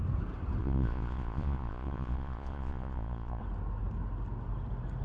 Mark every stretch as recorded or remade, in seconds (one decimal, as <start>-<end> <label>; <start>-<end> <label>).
0.0-0.6 recorded; 0.6-3.4 remade; 3.4-5.0 recorded